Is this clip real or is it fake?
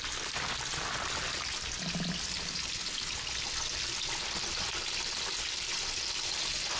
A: real